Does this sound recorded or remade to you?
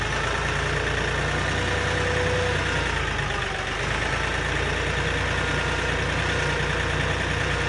recorded